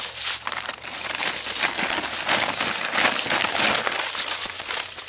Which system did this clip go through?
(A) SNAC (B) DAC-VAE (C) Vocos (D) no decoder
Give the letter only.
D